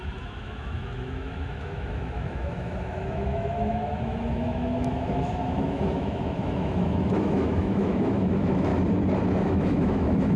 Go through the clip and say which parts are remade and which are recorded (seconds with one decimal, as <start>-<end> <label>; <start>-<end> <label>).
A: 0.0-8.7 remade; 8.7-9.4 recorded; 9.4-10.4 remade